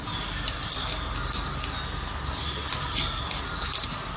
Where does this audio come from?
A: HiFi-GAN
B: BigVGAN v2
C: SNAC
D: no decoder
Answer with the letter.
D